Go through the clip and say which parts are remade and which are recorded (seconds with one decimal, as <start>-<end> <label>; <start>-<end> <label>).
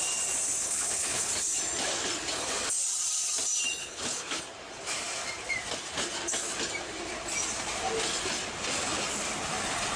0.0-0.6 recorded; 0.6-1.3 remade; 1.3-3.8 recorded; 3.8-4.4 remade; 4.4-10.0 recorded